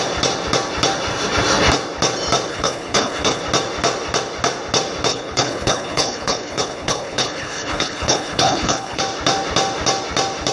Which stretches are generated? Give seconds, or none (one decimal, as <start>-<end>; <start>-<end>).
2.5-3.4; 5.1-9.0

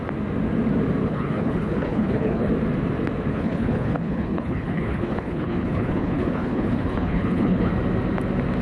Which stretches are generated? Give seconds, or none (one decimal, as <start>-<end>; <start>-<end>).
1.0-2.5; 3.3-7.7

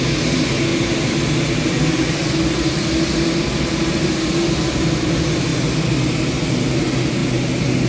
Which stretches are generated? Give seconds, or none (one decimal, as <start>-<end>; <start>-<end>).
none

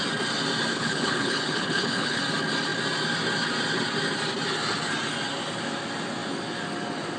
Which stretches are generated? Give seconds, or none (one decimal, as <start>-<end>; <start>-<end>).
0.7-2.2

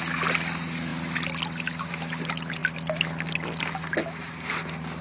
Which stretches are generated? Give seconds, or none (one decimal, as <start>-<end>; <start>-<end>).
none

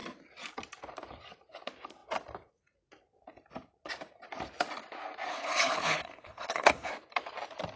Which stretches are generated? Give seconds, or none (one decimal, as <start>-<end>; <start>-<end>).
5.3-6.9